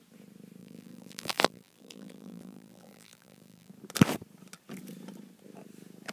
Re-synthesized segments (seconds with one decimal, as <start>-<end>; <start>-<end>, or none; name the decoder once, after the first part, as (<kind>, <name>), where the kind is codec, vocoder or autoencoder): 0.6-3.7 (vocoder, BigVGAN v2)